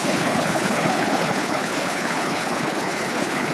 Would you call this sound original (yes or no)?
no